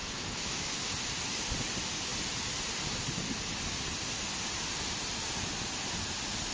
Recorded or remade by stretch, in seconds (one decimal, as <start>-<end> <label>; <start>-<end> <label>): 0.0-0.9 remade; 0.9-6.5 recorded